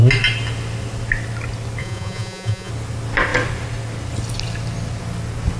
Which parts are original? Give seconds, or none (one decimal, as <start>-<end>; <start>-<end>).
0.0-1.8; 2.7-5.6